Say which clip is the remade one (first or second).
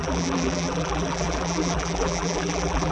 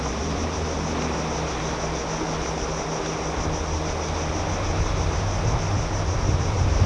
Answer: first